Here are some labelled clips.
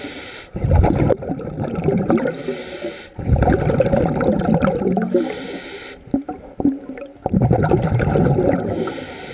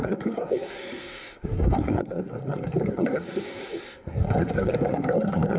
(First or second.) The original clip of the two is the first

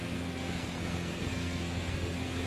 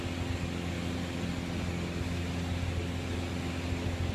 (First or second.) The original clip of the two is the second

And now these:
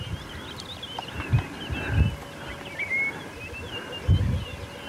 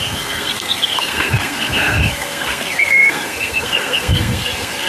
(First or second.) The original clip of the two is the first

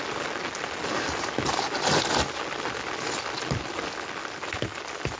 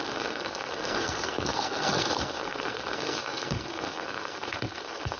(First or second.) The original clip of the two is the first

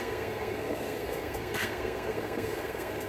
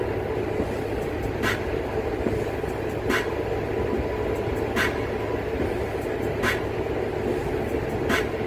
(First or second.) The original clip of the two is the second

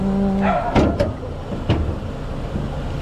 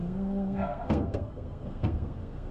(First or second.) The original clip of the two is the first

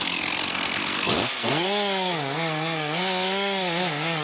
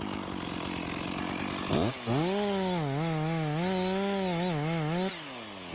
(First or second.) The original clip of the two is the second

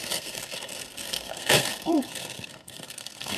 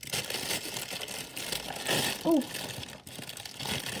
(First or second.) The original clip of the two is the second